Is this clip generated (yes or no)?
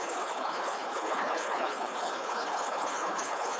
yes